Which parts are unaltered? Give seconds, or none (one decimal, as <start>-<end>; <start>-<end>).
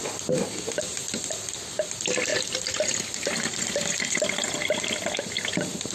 0.0-5.9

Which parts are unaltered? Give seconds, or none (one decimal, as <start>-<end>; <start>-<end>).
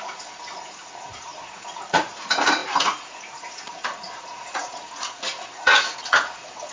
none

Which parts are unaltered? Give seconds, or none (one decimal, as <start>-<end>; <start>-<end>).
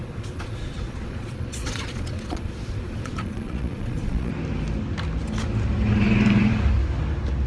4.3-7.5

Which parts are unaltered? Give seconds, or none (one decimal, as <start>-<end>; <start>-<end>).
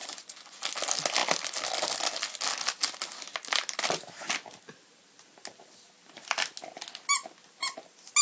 0.6-8.2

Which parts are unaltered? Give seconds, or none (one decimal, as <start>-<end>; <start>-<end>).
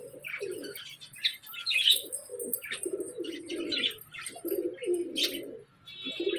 0.0-0.9; 2.3-6.4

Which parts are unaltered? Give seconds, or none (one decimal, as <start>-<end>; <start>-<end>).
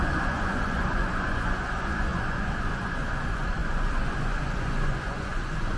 none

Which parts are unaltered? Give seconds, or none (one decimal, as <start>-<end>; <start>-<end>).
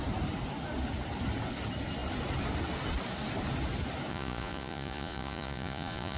0.0-4.1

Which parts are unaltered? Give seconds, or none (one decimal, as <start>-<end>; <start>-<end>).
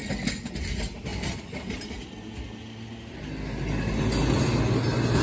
0.0-5.2